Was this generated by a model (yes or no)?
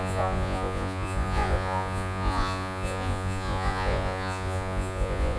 yes